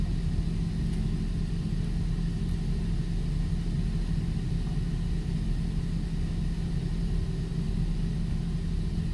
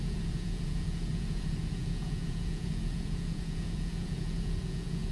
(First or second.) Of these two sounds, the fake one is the second